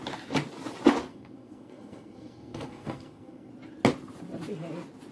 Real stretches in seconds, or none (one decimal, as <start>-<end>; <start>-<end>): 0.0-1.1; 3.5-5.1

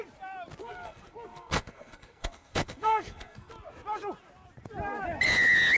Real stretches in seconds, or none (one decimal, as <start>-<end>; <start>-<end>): 0.0-0.6; 3.5-5.8

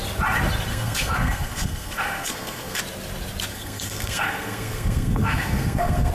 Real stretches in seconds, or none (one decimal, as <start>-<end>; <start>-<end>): 0.0-0.7; 2.8-3.5